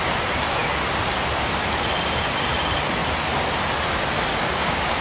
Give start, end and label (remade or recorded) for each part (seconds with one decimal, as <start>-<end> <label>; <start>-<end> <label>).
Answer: 0.0-4.3 recorded; 4.3-5.0 remade

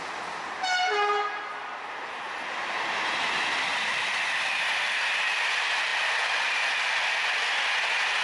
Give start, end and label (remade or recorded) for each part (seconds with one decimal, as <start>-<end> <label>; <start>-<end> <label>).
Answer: 0.0-8.2 recorded

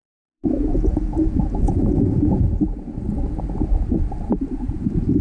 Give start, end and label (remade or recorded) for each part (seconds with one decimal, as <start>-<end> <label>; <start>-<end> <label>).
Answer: 0.0-2.6 remade; 2.6-5.2 recorded

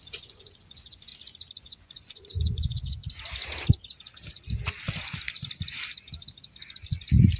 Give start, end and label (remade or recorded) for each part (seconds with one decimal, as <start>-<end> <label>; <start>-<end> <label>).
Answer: 0.0-1.1 remade; 1.1-1.6 recorded; 1.6-3.0 remade; 3.0-7.4 recorded

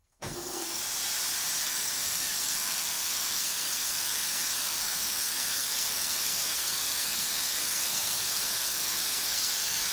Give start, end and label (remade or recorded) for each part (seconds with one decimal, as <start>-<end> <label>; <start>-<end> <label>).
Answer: 0.0-0.8 remade; 0.8-1.6 recorded; 1.6-9.9 remade

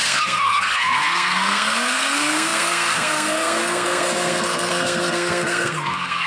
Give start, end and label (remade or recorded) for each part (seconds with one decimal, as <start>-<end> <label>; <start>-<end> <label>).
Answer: 0.0-6.3 remade

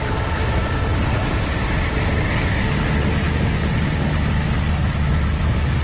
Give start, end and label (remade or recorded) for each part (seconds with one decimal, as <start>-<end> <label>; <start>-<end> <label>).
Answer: 0.0-5.8 recorded

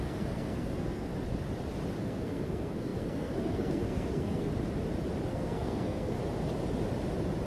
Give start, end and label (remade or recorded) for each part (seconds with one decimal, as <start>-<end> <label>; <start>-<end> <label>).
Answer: 0.0-1.1 remade; 1.1-2.0 recorded; 2.0-4.5 remade; 4.5-5.3 recorded; 5.3-6.2 remade; 6.2-7.5 recorded